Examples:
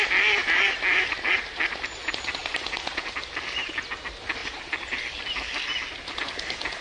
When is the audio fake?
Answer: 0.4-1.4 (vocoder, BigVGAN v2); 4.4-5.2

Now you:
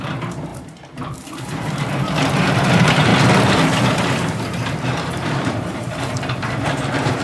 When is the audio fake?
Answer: 0.0-3.1 (vocoder, BigVGAN v2); 4.0-7.2